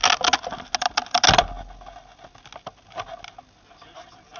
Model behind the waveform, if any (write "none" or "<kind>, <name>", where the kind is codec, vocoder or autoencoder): none